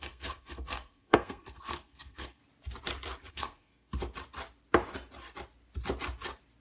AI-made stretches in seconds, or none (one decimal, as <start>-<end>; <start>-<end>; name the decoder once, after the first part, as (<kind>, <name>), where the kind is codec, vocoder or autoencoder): 0.0-2.4 (codec, SNAC); 3.3-3.9